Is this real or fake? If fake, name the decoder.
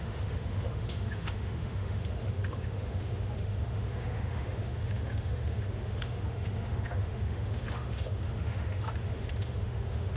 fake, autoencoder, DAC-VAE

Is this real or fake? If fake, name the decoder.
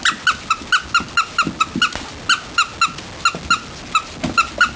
real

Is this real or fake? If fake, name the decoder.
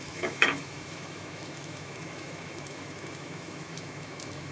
fake, autoencoder, DAC-VAE